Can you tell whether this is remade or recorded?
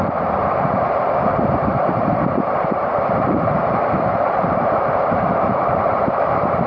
remade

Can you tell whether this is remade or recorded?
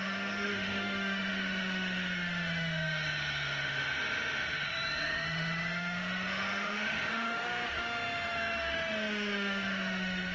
remade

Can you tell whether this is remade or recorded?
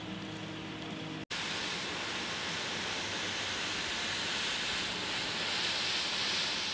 recorded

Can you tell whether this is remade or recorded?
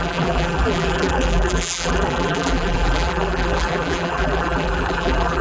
remade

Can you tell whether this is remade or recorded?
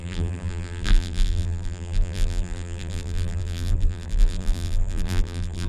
remade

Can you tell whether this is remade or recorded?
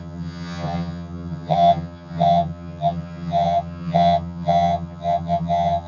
remade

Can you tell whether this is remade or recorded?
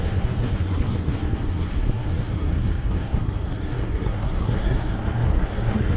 remade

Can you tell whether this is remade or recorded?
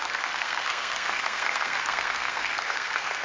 remade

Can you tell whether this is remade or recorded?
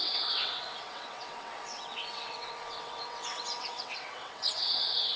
remade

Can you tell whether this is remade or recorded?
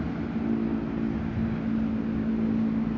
recorded